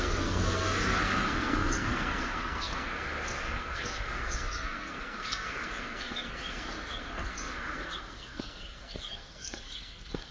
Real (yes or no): no